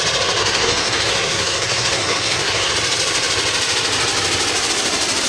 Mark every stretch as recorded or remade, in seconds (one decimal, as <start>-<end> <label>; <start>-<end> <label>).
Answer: 0.0-0.4 recorded; 0.4-2.7 remade; 2.7-5.3 recorded

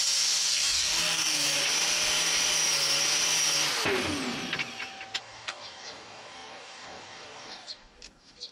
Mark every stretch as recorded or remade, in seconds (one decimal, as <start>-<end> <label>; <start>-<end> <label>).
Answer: 0.0-0.5 recorded; 0.5-1.6 remade; 1.6-5.2 recorded; 5.2-8.5 remade

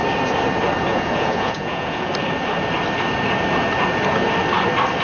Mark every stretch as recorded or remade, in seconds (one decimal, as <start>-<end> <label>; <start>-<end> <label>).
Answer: 0.0-0.9 recorded; 0.9-2.1 remade; 2.1-5.0 recorded

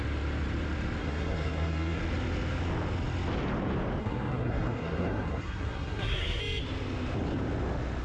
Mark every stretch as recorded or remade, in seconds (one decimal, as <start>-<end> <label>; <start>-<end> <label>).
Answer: 0.0-1.0 recorded; 1.0-2.0 remade; 2.0-4.0 recorded; 4.0-6.4 remade; 6.4-8.0 recorded

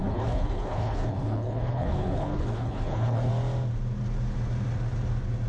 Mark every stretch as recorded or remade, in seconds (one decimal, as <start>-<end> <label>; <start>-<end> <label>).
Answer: 0.0-3.3 remade; 3.3-5.5 recorded

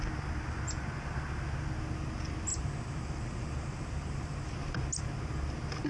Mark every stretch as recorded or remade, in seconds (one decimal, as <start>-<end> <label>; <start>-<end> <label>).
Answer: 0.0-2.5 recorded; 2.5-4.5 remade; 4.5-5.9 recorded